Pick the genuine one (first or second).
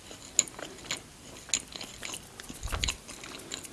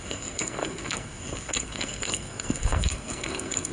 first